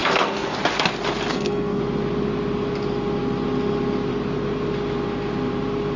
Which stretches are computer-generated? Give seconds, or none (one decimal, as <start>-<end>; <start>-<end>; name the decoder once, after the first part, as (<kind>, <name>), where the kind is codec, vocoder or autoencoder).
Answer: 0.0-0.6 (codec, SNAC); 1.3-1.8